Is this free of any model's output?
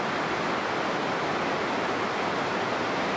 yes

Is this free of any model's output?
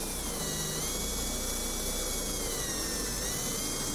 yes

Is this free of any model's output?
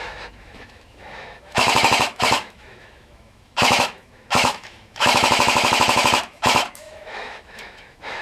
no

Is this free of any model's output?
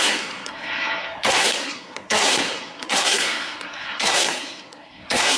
no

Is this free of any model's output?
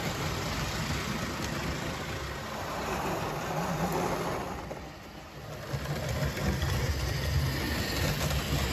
yes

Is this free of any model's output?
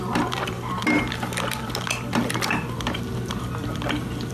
no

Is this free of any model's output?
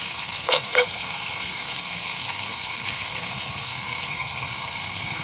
no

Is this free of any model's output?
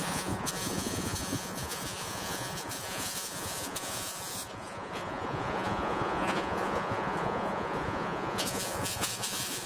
no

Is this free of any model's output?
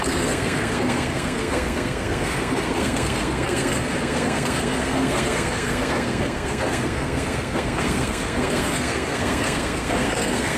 no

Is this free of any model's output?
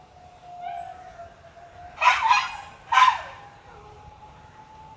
yes